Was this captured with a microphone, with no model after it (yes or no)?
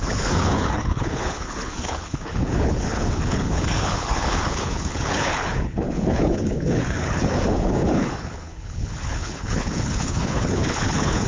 no